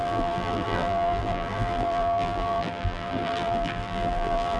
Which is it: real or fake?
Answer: fake